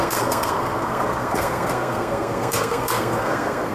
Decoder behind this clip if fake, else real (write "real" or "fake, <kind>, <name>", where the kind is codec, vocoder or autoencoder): fake, codec, SNAC